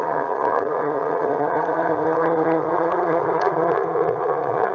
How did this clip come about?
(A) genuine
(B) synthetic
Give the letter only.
B